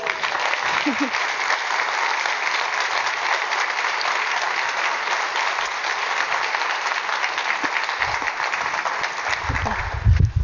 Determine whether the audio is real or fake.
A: real